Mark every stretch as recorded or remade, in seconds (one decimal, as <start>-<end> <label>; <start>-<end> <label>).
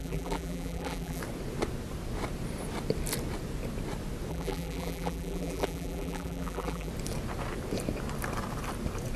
0.0-1.2 remade; 1.2-4.3 recorded; 4.3-6.9 remade; 6.9-9.2 recorded